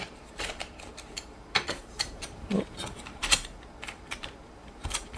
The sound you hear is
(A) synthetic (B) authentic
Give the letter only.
A